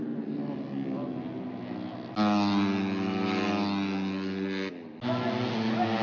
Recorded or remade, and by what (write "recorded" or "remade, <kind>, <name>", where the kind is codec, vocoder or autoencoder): recorded